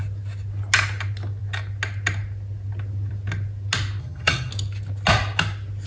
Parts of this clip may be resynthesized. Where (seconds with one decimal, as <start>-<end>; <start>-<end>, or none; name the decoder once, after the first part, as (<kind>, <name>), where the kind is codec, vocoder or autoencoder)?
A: 4.0-4.5 (vocoder, HiFi-GAN)